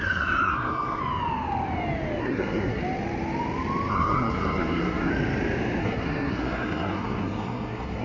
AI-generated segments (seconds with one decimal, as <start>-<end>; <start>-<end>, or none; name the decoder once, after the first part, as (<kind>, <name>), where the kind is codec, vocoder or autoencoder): 0.0-1.0 (codec, SNAC); 2.2-2.8; 3.9-5.1; 5.8-8.0